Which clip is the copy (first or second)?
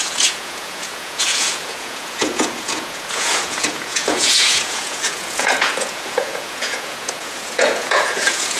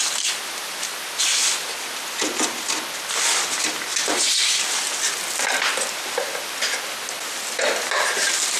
first